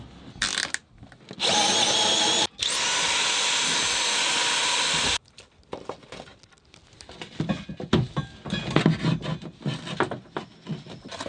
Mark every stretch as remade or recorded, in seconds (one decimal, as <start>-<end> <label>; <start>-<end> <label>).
0.0-11.3 recorded